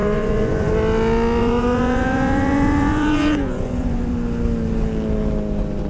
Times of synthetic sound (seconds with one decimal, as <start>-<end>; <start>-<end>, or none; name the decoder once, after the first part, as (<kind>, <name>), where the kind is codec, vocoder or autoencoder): 0.0-0.7 (vocoder, Vocos); 1.4-4.1